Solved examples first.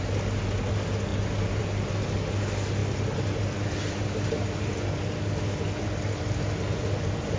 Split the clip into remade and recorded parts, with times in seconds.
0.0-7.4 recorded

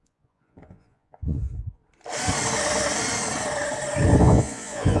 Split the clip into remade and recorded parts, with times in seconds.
0.0-1.8 remade; 1.8-4.2 recorded; 4.2-5.0 remade

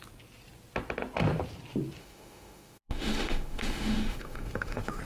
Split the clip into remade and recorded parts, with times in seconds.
0.0-2.0 recorded; 2.0-5.0 remade

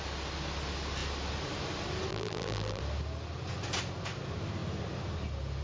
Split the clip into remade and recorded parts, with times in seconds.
0.0-2.1 recorded; 2.1-2.8 remade; 2.8-5.6 recorded

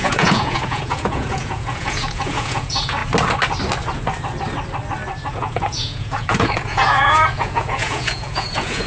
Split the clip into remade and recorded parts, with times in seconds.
0.0-3.0 remade; 3.0-5.3 recorded; 5.3-8.9 remade

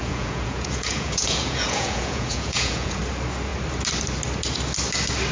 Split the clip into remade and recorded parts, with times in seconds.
0.0-3.0 remade; 3.0-5.3 recorded